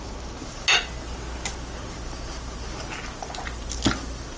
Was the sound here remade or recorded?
recorded